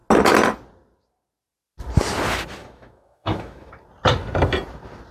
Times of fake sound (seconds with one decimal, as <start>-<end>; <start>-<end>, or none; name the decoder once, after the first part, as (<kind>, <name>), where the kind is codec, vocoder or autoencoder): 2.6-3.7 (autoencoder, DAC-VAE)